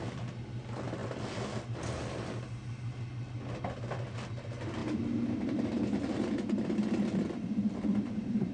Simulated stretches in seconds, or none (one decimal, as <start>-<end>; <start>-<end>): none